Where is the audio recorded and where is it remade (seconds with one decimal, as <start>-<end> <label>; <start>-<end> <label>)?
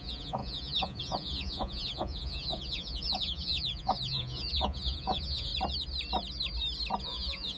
0.0-5.5 remade; 5.5-7.0 recorded; 7.0-7.6 remade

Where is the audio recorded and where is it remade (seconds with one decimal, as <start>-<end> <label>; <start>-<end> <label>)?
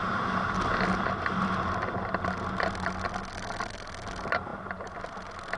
0.0-5.6 recorded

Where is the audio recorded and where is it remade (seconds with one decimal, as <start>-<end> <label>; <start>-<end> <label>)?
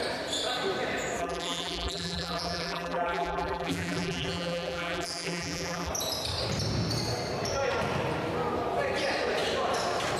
0.0-1.2 recorded; 1.2-5.9 remade; 5.9-10.2 recorded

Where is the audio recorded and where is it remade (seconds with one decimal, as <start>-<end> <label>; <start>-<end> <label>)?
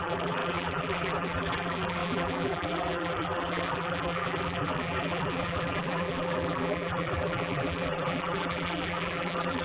0.0-9.6 remade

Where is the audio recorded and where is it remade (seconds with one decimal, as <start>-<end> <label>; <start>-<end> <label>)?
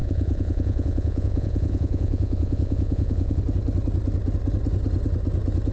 0.0-3.4 remade; 3.4-5.7 recorded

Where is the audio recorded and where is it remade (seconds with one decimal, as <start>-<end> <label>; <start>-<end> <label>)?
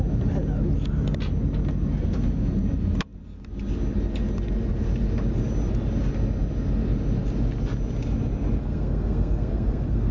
0.0-8.6 recorded; 8.6-10.1 remade